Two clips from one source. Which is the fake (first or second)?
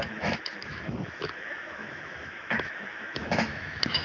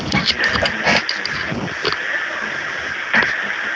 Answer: first